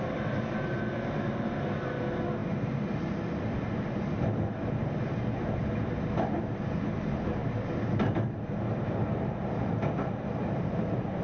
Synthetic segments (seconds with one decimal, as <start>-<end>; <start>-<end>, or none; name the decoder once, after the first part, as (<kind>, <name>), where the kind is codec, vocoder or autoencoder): none